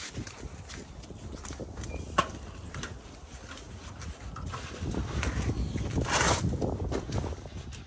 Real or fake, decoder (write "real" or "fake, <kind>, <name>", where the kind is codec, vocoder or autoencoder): real